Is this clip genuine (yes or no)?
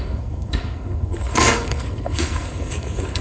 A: no